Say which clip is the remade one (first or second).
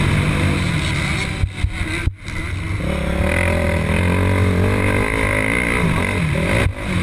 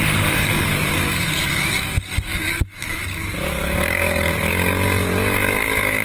second